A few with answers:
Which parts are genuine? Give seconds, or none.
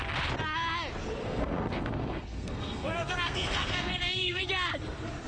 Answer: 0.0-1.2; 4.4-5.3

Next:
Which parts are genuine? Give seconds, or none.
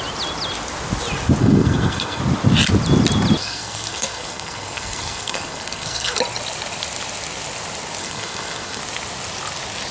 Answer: 0.0-1.4; 2.2-3.4; 6.2-8.0; 8.8-9.9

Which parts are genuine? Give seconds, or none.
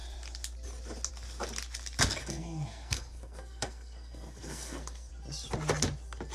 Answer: 0.0-2.2; 5.1-6.3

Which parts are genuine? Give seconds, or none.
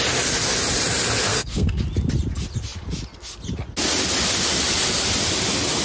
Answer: 0.0-1.3; 1.8-5.8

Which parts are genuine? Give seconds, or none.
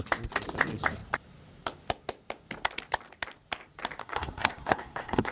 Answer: 0.0-4.0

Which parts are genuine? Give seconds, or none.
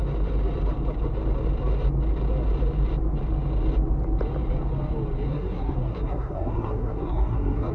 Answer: 0.0-5.3